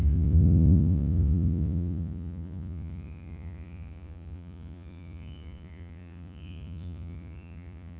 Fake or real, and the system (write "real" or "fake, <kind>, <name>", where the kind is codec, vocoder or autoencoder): fake, vocoder, Vocos